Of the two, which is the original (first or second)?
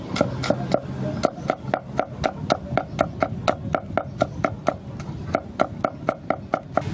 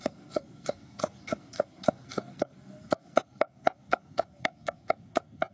first